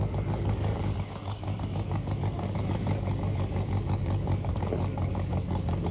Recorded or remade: remade